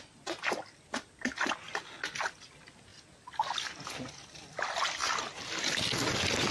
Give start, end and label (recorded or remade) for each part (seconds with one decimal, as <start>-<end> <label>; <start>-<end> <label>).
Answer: 0.0-6.5 recorded